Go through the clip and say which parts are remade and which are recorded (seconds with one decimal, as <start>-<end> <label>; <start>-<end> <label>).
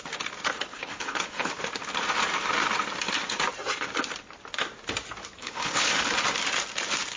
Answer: 0.0-0.7 recorded; 0.7-1.5 remade; 1.5-5.4 recorded; 5.4-6.1 remade; 6.1-7.2 recorded